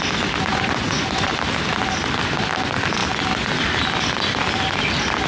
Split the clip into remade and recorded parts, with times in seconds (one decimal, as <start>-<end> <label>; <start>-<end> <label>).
0.0-0.5 recorded; 0.5-1.3 remade; 1.3-5.3 recorded